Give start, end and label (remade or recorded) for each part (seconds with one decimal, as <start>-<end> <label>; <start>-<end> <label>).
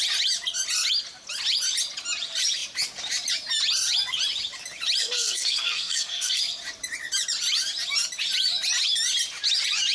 0.0-5.0 recorded; 5.0-6.4 remade; 6.4-9.9 recorded